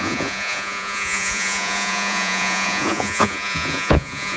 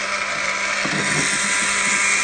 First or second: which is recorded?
second